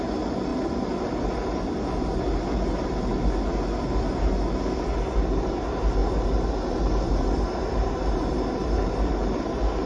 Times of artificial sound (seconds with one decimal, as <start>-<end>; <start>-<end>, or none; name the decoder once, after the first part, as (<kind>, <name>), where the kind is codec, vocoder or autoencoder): 6.0-9.1 (vocoder, BigVGAN v2)